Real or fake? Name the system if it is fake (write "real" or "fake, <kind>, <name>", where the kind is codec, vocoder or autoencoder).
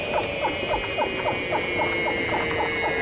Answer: real